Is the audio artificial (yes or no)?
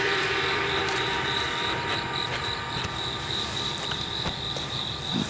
yes